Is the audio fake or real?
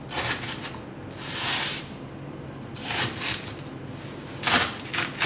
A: real